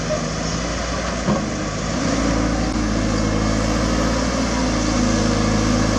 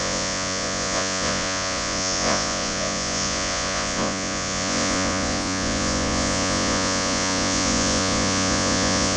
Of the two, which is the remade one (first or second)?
second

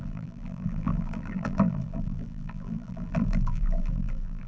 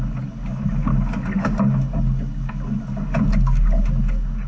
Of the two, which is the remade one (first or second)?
first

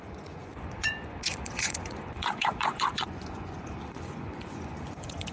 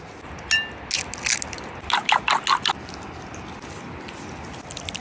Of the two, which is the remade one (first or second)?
first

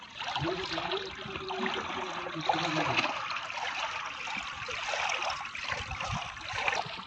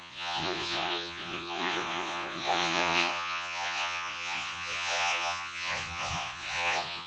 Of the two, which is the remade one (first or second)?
second